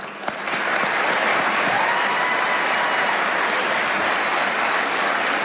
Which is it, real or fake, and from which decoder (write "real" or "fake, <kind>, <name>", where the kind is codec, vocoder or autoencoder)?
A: real